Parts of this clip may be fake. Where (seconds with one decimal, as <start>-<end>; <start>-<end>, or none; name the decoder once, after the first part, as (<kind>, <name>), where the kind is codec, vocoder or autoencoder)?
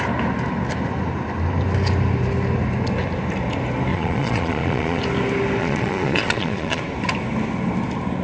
3.9-5.0 (vocoder, Vocos); 5.6-6.8